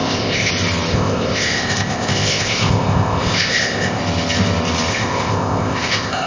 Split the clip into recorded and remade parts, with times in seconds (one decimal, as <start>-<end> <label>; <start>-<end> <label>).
0.0-0.5 remade; 0.5-0.9 recorded; 0.9-4.0 remade; 4.0-4.9 recorded; 4.9-6.3 remade